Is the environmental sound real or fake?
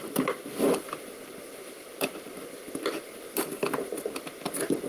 real